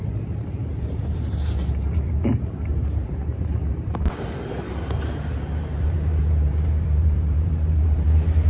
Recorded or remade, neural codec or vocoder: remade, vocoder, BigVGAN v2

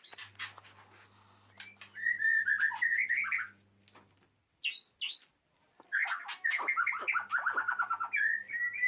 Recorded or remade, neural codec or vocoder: recorded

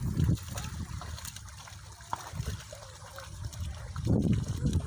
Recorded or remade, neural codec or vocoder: recorded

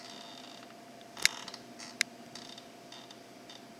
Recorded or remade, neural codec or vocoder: recorded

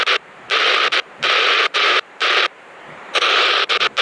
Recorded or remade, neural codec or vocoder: remade, vocoder, BigVGAN v2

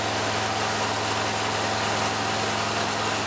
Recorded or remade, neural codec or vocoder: recorded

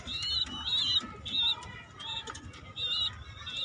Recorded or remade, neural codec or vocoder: recorded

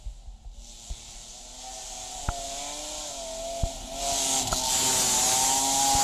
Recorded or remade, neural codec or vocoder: recorded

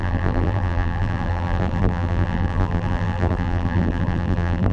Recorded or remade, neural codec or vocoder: remade, vocoder, BigVGAN v2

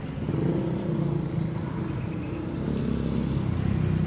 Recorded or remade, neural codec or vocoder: recorded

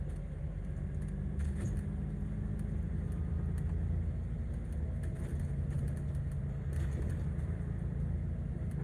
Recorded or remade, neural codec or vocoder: recorded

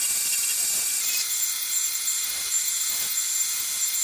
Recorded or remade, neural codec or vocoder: remade, vocoder, BigVGAN v2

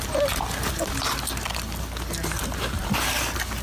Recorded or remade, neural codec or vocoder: recorded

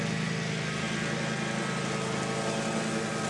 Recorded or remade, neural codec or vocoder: recorded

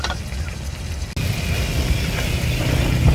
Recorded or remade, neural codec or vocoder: recorded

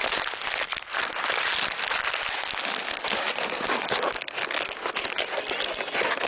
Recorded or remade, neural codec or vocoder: recorded